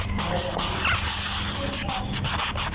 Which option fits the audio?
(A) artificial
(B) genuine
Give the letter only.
B